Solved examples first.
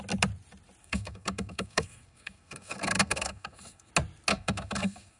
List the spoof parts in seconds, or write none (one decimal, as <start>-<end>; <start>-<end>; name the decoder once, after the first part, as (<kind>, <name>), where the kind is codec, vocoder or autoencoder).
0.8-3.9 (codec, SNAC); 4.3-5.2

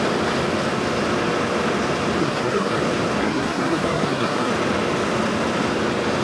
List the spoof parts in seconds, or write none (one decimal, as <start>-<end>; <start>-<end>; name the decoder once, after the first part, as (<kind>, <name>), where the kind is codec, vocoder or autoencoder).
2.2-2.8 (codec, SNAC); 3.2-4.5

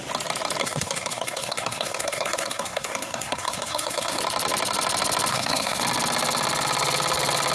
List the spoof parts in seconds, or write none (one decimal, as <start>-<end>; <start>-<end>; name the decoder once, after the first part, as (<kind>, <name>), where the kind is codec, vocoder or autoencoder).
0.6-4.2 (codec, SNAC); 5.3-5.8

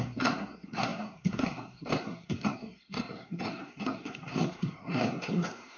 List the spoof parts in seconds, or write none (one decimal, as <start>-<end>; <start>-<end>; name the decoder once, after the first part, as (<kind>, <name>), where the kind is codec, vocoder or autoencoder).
0.0-5.8 (codec, SNAC)

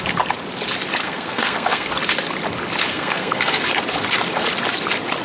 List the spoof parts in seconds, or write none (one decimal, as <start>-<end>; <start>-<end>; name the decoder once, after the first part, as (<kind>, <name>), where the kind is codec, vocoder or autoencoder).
1.0-1.9 (codec, SNAC); 2.9-3.6